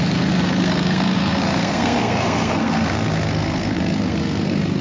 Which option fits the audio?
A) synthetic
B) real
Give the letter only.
A